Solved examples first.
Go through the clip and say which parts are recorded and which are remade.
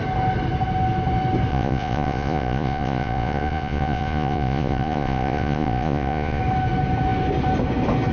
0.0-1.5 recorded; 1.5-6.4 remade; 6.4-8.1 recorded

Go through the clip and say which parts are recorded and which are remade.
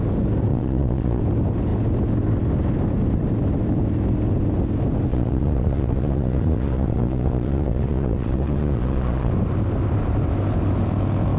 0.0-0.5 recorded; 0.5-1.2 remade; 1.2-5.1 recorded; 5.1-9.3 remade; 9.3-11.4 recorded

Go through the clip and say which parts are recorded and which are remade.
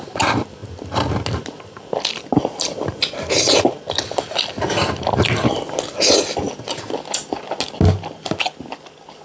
0.0-9.2 recorded